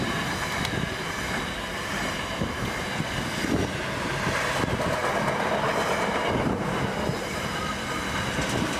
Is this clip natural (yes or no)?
yes